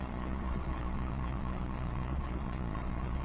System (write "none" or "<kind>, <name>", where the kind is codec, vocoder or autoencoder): vocoder, Vocos